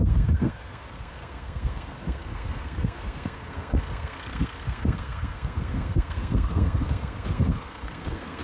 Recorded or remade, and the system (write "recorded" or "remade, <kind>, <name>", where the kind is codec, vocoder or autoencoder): remade, codec, SNAC